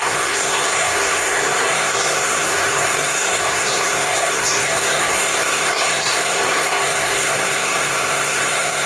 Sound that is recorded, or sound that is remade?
remade